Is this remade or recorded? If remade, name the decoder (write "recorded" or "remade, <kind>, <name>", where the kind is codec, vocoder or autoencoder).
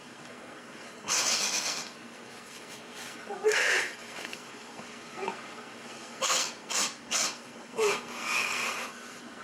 remade, codec, SNAC